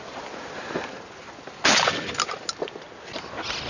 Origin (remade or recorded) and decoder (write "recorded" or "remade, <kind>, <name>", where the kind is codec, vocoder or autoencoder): recorded